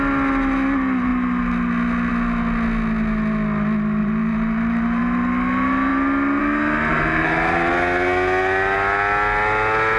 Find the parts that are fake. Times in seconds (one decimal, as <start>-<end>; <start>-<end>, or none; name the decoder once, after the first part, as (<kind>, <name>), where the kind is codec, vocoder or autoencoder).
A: 4.0-5.0 (vocoder, BigVGAN v2); 6.9-7.7